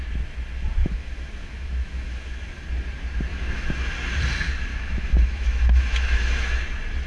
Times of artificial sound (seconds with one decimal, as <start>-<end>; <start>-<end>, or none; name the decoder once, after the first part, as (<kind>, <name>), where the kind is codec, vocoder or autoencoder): 0.8-2.5 (autoencoder, DAC-VAE); 3.3-3.9; 4.7-6.6